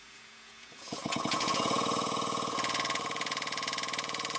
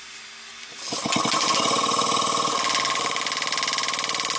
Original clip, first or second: second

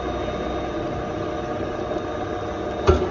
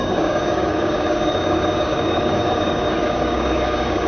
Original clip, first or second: first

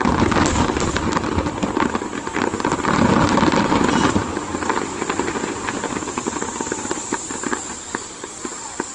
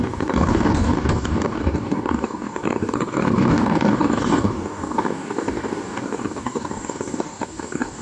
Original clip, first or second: first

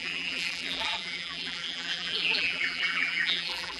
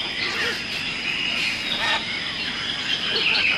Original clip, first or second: second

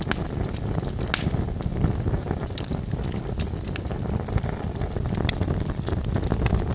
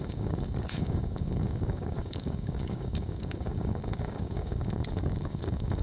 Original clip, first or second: first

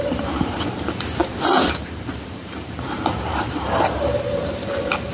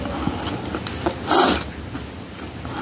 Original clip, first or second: second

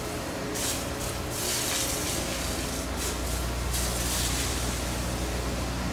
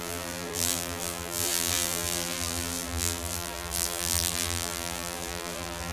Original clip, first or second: first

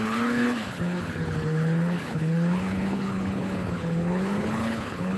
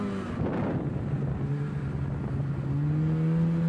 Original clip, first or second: second